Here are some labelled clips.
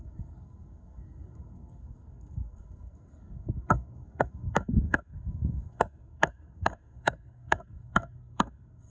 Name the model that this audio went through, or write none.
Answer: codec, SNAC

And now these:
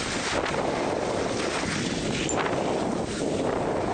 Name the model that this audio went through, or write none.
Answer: none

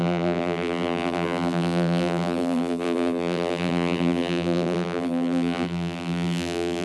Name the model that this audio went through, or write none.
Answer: vocoder, BigVGAN v2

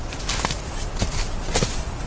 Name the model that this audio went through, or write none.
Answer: none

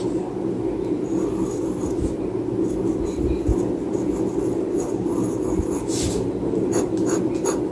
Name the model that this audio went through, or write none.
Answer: none